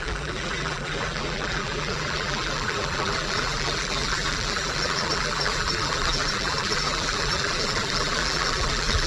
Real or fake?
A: fake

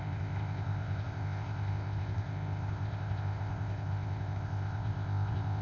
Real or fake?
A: fake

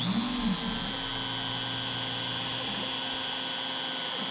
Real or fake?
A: real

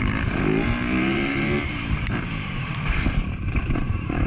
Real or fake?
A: fake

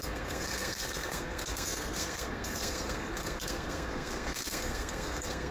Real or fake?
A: fake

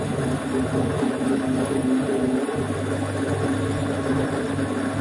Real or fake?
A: real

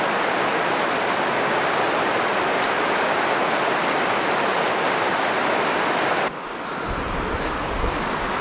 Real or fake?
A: real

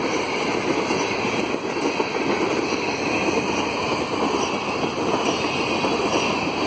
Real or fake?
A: real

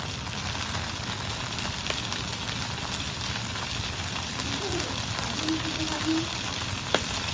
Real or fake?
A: real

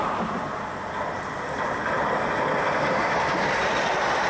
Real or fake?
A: real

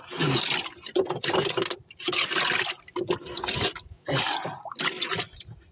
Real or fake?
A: real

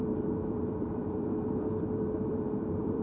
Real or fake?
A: fake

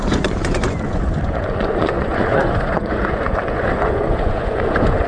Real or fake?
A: fake